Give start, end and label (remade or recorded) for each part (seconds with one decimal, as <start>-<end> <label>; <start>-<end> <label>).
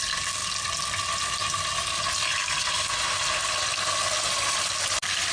0.0-5.3 recorded